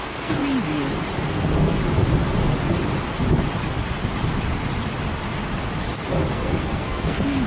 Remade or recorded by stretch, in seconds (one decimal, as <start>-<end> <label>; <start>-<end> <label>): 0.0-0.4 remade; 0.4-1.3 recorded; 1.3-1.8 remade; 1.8-6.3 recorded; 6.3-7.5 remade